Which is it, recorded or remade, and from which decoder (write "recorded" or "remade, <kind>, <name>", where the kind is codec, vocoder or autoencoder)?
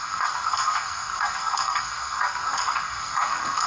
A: remade, codec, SNAC